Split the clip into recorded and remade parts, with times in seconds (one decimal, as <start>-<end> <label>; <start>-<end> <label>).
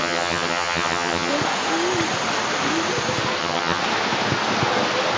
0.0-1.3 remade; 1.3-3.4 recorded; 3.4-3.8 remade; 3.8-5.2 recorded